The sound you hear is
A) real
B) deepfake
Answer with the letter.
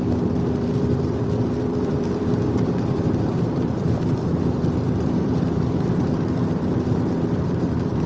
B